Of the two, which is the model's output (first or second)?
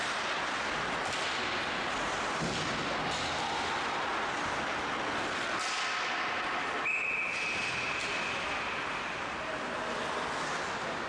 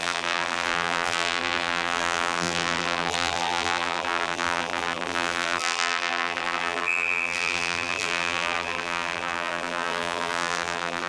second